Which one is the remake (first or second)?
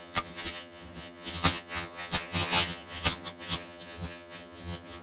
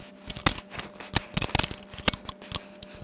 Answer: first